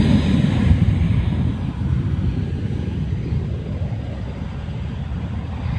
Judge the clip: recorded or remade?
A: recorded